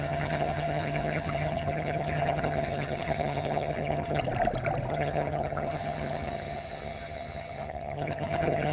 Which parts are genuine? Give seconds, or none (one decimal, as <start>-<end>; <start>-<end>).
4.2-4.9